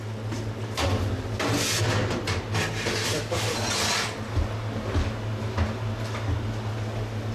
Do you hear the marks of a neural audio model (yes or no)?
no